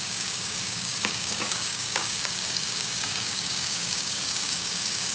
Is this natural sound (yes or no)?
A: no